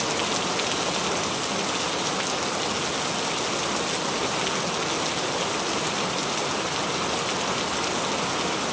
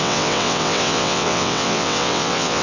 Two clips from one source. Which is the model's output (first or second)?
second